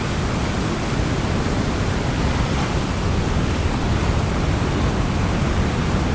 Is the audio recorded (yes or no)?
yes